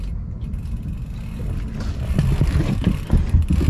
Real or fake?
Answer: real